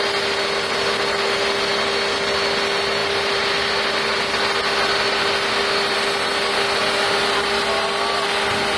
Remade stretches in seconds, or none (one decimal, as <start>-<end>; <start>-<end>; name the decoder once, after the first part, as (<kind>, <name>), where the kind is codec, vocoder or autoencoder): none